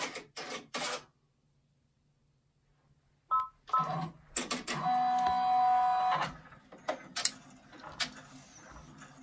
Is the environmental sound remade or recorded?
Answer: recorded